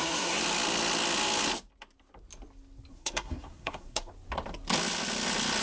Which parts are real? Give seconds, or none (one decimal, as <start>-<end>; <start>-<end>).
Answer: 0.4-2.9; 4.1-5.6